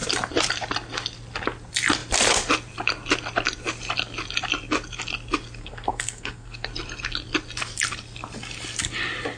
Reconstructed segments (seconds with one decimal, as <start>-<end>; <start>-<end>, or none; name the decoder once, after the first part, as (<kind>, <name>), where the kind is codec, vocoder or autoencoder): 5.6-6.7 (codec, SNAC)